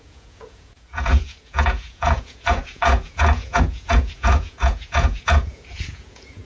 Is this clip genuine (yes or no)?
no